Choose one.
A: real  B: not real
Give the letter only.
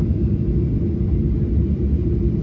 A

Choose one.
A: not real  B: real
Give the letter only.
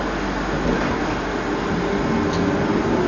B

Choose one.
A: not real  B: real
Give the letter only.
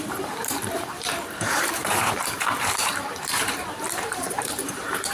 A